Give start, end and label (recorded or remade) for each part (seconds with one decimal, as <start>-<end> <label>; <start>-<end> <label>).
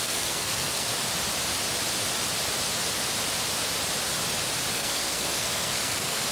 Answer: 0.0-0.9 remade; 0.9-4.7 recorded; 4.7-6.3 remade